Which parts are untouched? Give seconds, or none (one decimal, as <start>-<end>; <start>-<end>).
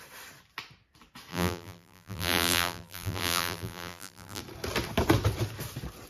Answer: 0.0-1.3; 4.4-6.1